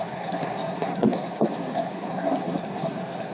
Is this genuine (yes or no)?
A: no